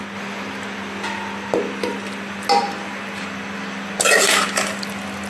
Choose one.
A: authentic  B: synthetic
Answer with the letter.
A